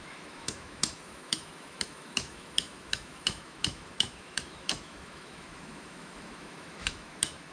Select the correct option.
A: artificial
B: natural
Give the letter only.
A